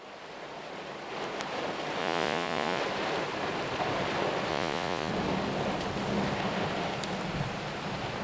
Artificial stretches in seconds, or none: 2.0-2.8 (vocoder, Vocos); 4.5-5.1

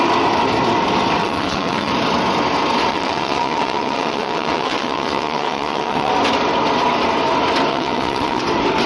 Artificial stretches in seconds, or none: 1.2-1.9 (vocoder, WaveNeXt); 2.9-6.1; 7.7-8.4

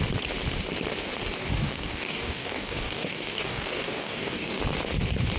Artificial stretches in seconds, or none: 1.4-4.6 (codec, DAC)

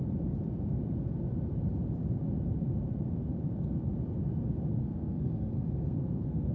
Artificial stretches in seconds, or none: 4.8-6.5 (codec, SNAC)